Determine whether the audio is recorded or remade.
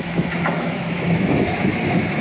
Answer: remade